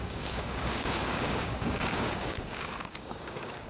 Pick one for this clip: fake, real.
fake